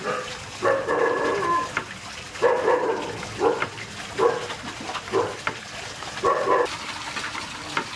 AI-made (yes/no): no